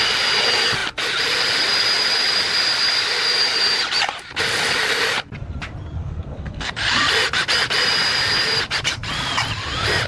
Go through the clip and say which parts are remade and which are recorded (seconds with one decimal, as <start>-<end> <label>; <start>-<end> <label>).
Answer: 0.0-6.0 recorded; 6.0-6.7 remade; 6.7-10.1 recorded

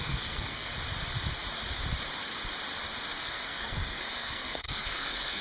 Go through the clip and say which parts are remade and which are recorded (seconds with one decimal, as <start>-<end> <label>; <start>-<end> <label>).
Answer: 0.0-0.7 remade; 0.7-3.2 recorded; 3.2-5.4 remade

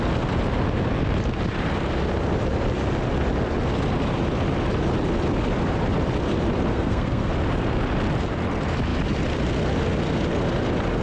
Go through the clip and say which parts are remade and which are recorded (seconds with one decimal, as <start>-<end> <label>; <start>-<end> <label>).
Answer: 0.0-6.7 recorded; 6.7-7.3 remade; 7.3-11.0 recorded

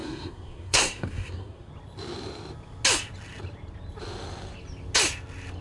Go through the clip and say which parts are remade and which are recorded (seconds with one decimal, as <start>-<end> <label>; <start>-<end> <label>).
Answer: 0.0-1.7 remade; 1.7-5.6 recorded

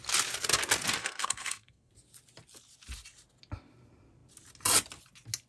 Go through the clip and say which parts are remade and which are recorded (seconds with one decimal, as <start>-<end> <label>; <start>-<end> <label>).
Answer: 0.0-1.0 recorded; 1.0-1.9 remade; 1.9-5.5 recorded

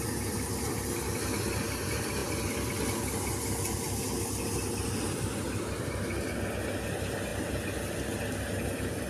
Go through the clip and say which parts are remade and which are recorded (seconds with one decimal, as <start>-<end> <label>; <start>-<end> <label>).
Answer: 0.0-9.1 recorded

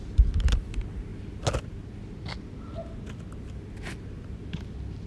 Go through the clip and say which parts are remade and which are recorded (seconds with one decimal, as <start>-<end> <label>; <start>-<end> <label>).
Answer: 0.0-5.1 recorded